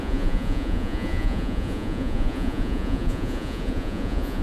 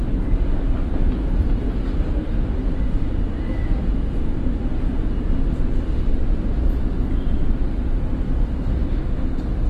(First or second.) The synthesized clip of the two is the first